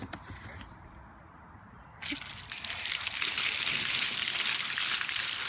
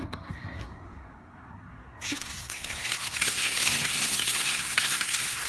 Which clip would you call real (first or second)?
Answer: first